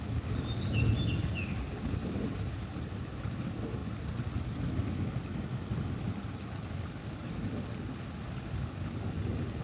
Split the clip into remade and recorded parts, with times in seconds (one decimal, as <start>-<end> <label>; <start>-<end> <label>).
0.0-2.0 recorded; 2.0-3.0 remade; 3.0-9.6 recorded